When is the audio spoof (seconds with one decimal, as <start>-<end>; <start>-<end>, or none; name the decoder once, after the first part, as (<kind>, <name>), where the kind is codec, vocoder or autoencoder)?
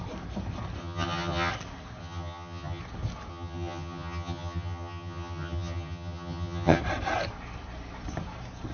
0.8-1.5 (vocoder, HiFi-GAN); 2.0-2.8; 3.3-6.8